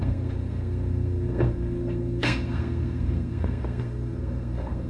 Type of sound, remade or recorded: remade